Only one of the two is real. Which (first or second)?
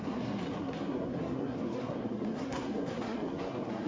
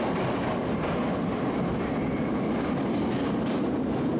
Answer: second